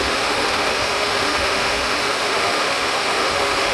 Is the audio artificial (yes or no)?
yes